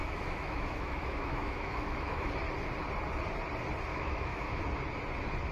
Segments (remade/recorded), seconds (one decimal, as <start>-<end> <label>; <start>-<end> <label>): 0.0-2.3 remade; 2.3-3.9 recorded; 3.9-4.6 remade; 4.6-5.5 recorded